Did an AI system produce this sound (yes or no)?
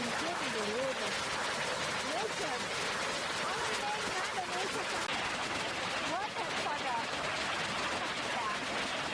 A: no